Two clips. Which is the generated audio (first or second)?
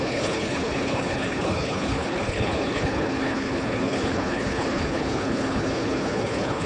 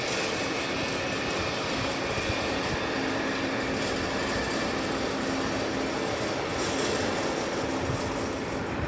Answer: first